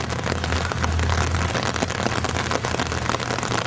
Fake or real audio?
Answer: real